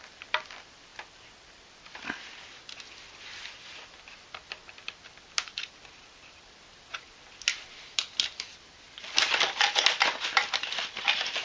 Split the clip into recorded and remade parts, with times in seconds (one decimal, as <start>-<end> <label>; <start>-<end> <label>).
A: 0.0-0.9 remade; 0.9-1.9 recorded; 1.9-11.4 remade

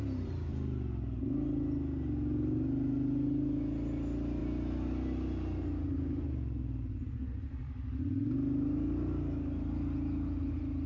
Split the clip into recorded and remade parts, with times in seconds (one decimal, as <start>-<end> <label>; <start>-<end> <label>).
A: 0.0-10.9 recorded

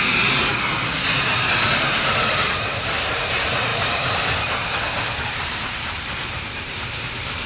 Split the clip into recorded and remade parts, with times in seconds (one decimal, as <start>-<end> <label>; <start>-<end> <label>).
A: 0.0-0.5 remade; 0.5-1.8 recorded; 1.8-3.7 remade; 3.7-5.2 recorded; 5.2-7.5 remade

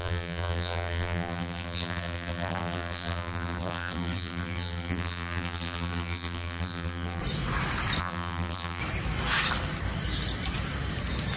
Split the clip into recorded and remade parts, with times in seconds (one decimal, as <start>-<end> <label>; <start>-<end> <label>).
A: 0.0-7.2 remade; 7.2-8.0 recorded; 8.0-8.8 remade; 8.8-11.4 recorded

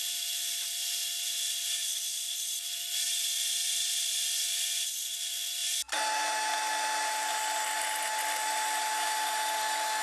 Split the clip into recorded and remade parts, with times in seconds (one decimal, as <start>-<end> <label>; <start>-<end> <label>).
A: 0.0-1.8 recorded; 1.8-4.4 remade; 4.4-10.0 recorded

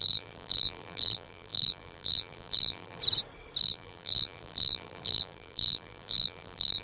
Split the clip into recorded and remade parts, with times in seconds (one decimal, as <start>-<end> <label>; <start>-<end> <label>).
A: 0.0-3.0 remade; 3.0-3.6 recorded; 3.6-6.8 remade